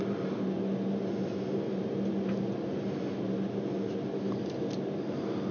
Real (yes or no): yes